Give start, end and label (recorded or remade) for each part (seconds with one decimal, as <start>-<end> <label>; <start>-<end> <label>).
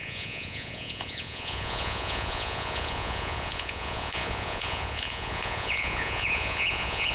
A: 0.0-7.1 remade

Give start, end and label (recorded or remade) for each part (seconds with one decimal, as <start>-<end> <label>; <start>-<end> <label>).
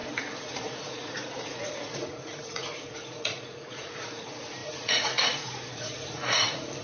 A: 0.0-6.8 remade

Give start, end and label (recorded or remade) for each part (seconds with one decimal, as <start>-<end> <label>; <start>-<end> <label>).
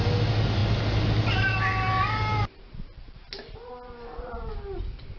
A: 0.0-5.2 recorded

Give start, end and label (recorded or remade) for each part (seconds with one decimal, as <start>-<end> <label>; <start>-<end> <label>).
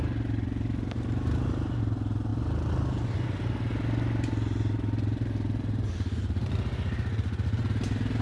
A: 0.0-8.2 recorded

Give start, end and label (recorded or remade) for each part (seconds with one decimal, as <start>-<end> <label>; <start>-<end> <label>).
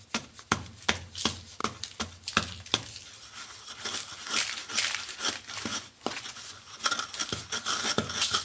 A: 0.0-5.7 recorded; 5.7-6.8 remade; 6.8-8.4 recorded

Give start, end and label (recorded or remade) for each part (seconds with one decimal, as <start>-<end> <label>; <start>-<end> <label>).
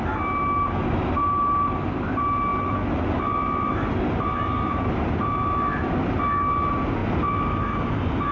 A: 0.0-8.3 recorded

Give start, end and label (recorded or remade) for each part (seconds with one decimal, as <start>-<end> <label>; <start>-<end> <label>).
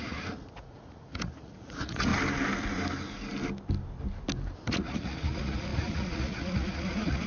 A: 0.0-2.1 remade; 2.1-4.7 recorded; 4.7-7.3 remade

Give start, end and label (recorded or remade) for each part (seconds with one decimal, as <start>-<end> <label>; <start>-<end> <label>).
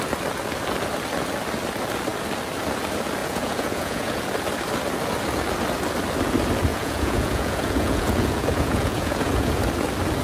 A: 0.0-3.2 recorded; 3.2-4.2 remade; 4.2-6.7 recorded; 6.7-9.6 remade; 9.6-10.2 recorded